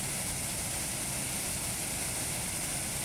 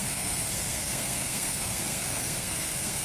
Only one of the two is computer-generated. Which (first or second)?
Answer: second